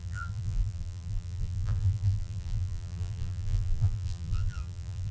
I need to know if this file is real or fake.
fake